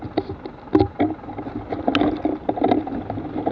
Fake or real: real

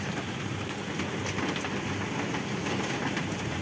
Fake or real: real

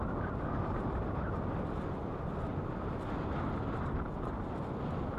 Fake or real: real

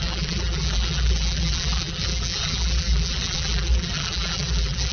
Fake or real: fake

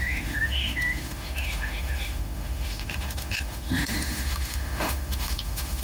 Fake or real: fake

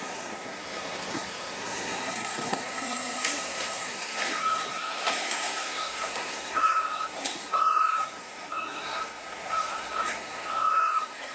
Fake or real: fake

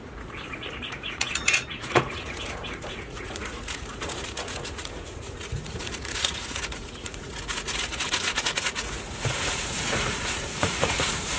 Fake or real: fake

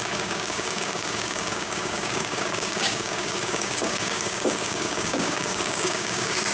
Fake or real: fake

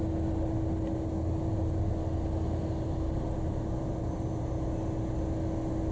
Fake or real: real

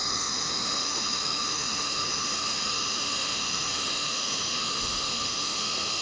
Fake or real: fake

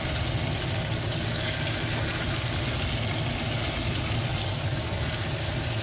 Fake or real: real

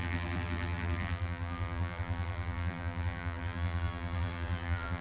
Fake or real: fake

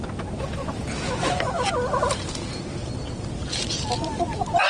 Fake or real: real